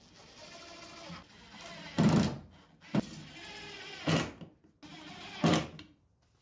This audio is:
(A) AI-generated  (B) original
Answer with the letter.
B